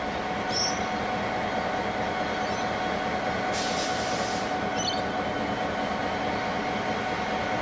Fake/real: real